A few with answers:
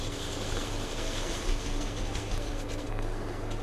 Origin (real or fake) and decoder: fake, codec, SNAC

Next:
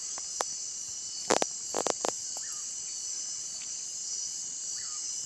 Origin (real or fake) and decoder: real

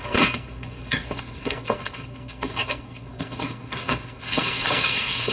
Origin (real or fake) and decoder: fake, codec, SNAC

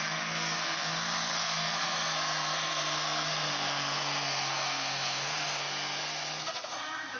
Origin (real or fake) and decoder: fake, codec, SNAC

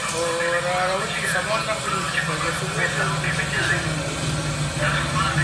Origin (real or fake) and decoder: real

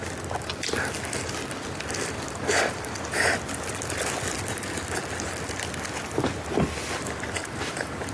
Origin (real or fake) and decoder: real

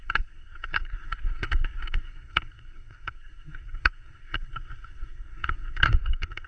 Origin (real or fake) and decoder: fake, codec, SNAC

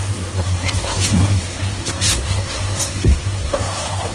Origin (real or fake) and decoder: fake, codec, SNAC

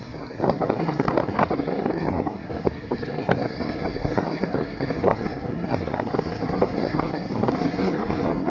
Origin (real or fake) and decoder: fake, codec, SNAC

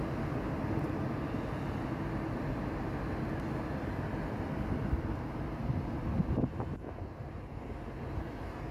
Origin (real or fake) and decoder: real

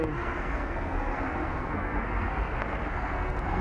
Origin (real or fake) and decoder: fake, codec, SNAC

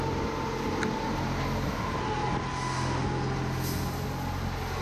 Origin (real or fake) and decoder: real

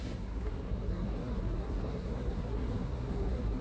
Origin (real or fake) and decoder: fake, codec, SNAC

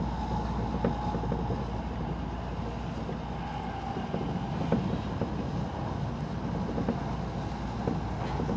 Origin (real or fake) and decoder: real